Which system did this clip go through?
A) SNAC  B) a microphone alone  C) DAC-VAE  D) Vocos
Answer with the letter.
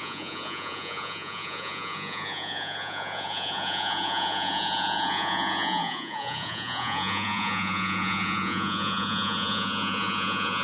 D